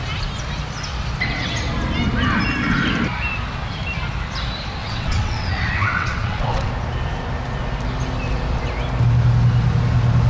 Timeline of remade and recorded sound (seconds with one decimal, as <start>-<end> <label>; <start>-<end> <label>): 0.0-4.8 recorded; 4.8-6.7 remade; 6.7-10.3 recorded